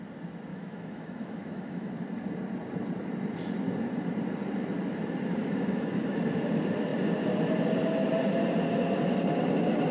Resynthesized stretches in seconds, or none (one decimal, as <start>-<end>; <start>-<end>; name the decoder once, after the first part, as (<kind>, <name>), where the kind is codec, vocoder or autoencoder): 0.5-1.9 (autoencoder, DAC-VAE); 5.4-6.2